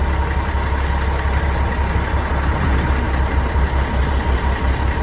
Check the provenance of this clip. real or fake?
real